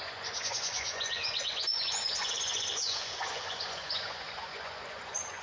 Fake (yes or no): yes